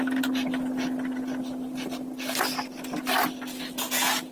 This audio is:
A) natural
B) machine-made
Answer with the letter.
A